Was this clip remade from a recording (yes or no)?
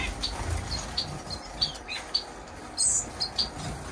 no